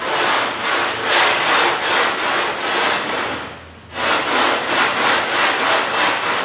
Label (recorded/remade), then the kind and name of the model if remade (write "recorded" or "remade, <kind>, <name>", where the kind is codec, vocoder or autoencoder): recorded